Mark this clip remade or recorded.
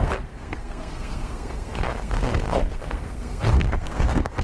remade